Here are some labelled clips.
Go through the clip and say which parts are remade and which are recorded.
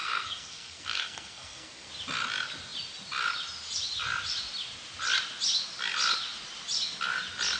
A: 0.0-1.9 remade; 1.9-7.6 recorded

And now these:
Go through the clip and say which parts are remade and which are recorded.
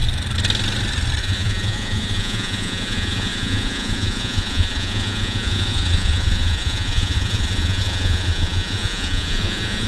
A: 0.0-1.2 recorded; 1.2-9.9 remade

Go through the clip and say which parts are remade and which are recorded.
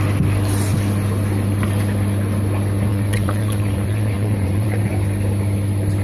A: 0.0-2.9 recorded; 2.9-4.9 remade; 4.9-6.0 recorded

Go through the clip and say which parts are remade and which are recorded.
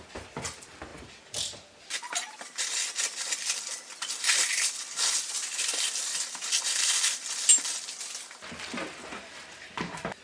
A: 0.0-10.2 recorded